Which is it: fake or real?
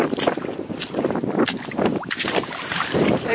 fake